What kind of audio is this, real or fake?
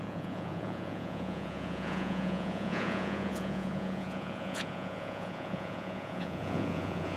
fake